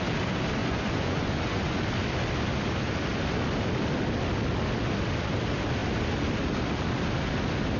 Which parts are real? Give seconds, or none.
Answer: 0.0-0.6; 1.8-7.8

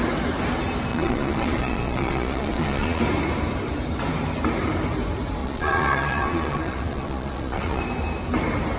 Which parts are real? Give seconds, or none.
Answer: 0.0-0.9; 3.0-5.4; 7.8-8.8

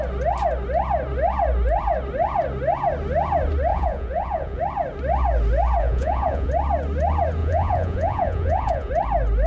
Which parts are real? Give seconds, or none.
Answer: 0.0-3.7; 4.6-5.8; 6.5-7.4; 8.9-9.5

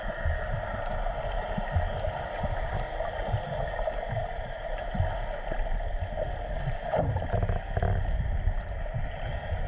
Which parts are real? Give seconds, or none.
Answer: 0.0-9.7

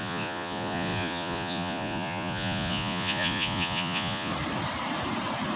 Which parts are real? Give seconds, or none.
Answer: 4.3-5.6